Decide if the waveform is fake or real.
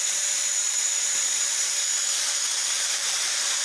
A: fake